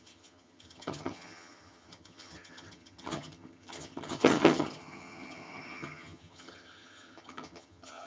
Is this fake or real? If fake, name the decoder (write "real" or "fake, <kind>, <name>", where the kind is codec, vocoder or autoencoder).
fake, vocoder, HiFi-GAN